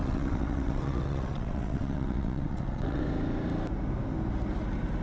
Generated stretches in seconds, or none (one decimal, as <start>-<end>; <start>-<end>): 0.0-3.0